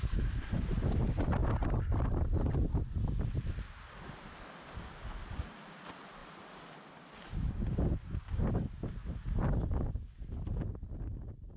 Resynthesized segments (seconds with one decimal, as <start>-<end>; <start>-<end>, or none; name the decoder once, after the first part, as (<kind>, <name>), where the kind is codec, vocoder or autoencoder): none